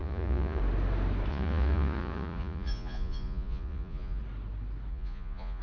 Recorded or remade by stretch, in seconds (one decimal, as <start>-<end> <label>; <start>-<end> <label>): 0.0-0.6 remade; 0.6-1.3 recorded; 1.3-4.2 remade; 4.2-4.9 recorded; 4.9-5.6 remade